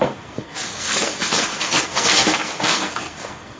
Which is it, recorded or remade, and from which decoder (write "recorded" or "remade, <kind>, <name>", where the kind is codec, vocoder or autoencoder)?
remade, codec, SNAC